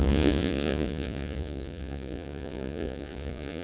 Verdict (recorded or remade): remade